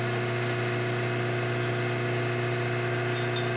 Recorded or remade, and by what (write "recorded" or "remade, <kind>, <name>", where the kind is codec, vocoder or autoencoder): recorded